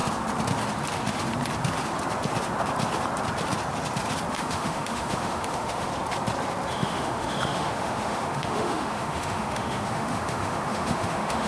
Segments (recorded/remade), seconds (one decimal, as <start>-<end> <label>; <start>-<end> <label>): 0.0-4.3 recorded; 4.3-5.9 remade; 5.9-6.7 recorded; 6.7-11.5 remade